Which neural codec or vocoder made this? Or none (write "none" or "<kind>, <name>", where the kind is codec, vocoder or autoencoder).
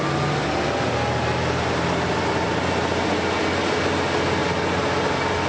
none